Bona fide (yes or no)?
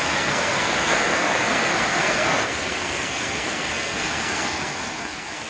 no